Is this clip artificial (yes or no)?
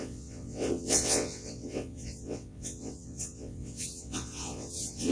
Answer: yes